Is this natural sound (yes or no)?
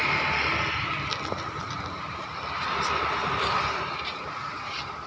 yes